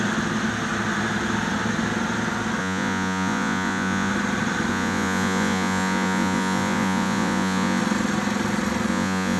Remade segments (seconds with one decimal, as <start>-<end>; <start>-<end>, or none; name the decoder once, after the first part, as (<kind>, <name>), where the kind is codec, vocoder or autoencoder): 2.6-4.1 (vocoder, Vocos); 4.7-7.8; 8.9-9.4